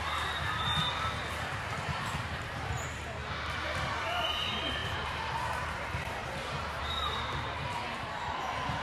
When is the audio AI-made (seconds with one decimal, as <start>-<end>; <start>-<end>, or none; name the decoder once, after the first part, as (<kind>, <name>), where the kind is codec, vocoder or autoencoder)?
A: 0.0-0.8 (vocoder, BigVGAN v2); 1.6-3.2; 4.0-8.8

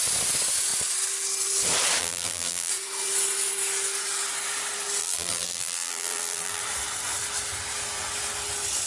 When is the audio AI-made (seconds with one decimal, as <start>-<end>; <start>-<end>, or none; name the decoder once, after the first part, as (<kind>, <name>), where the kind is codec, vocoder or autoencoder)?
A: 2.0-2.7 (vocoder, BigVGAN v2); 5.0-6.6

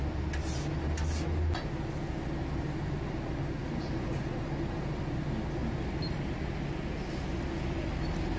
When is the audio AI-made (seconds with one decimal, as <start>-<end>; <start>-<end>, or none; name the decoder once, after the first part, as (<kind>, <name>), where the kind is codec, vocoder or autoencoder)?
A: 3.6-4.2 (vocoder, BigVGAN v2)